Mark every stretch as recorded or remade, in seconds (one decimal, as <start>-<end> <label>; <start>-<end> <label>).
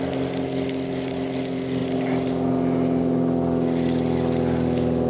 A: 0.0-5.1 recorded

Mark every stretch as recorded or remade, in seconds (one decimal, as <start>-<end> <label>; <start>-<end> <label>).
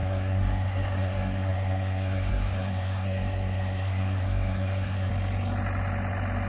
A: 0.0-5.1 remade; 5.1-6.5 recorded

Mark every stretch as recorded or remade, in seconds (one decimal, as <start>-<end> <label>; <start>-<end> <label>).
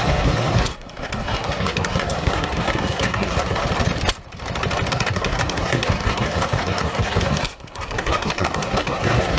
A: 0.0-3.6 remade; 3.6-4.9 recorded; 4.9-9.4 remade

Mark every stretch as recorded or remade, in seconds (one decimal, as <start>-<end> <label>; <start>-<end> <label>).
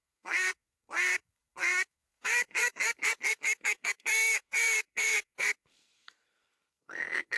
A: 0.0-7.4 remade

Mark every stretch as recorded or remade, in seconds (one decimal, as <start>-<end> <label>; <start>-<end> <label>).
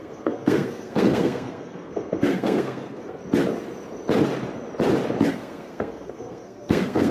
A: 0.0-3.2 remade; 3.2-5.3 recorded; 5.3-7.1 remade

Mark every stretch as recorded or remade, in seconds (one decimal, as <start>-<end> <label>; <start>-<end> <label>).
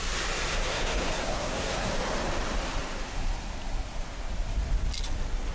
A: 0.0-0.6 recorded; 0.6-1.9 remade; 1.9-5.5 recorded